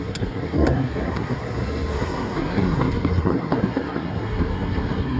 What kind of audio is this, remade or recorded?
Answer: remade